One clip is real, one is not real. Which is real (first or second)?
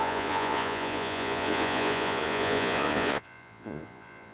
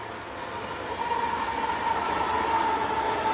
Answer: second